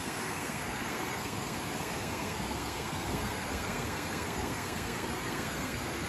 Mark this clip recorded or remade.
remade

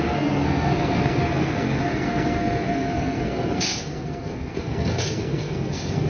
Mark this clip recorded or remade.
remade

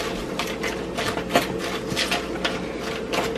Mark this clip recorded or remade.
recorded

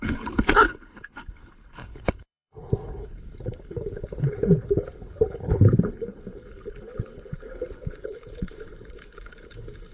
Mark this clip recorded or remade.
remade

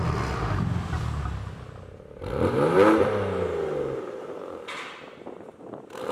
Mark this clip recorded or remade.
recorded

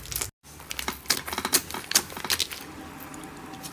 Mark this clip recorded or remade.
recorded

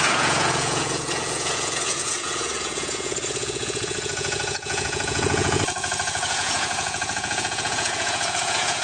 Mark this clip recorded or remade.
remade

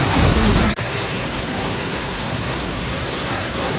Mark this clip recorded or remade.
remade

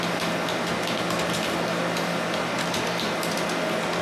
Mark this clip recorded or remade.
recorded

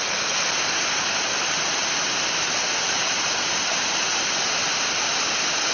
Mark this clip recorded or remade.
recorded